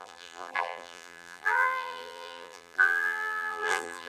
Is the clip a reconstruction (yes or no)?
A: yes